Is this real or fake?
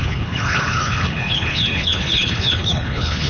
fake